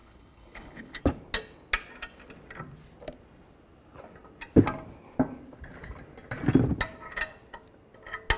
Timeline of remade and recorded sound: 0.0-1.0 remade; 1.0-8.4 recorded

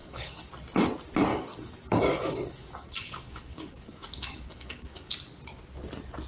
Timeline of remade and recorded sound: 0.0-0.5 remade; 0.5-1.3 recorded; 1.3-5.1 remade; 5.1-6.3 recorded

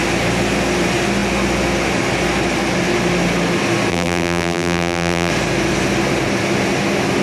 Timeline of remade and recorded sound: 0.0-3.9 recorded; 3.9-5.3 remade; 5.3-7.2 recorded

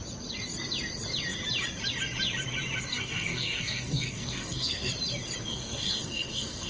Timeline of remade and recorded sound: 0.0-2.9 recorded; 2.9-4.9 remade; 4.9-5.5 recorded; 5.5-6.7 remade

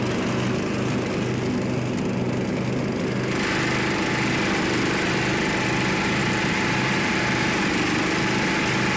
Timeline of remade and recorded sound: 0.0-6.2 recorded; 6.2-7.5 remade; 7.5-9.0 recorded

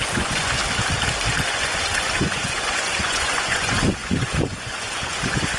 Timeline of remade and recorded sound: 0.0-0.6 remade; 0.6-1.4 recorded; 1.4-5.6 remade